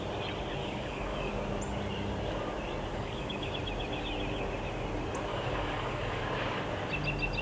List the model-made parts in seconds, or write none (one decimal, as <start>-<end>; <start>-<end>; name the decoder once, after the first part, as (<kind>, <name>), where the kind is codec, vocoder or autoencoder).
0.6-1.3 (codec, DAC); 2.9-3.5; 5.3-6.2